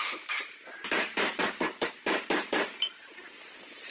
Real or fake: fake